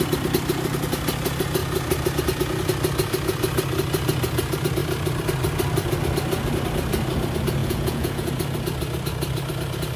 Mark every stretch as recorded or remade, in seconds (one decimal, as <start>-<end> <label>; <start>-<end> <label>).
0.0-7.6 recorded; 7.6-8.3 remade; 8.3-10.0 recorded